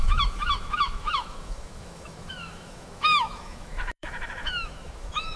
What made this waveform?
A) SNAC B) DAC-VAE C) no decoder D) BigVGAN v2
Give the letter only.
B